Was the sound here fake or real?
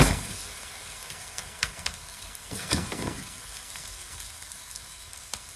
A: fake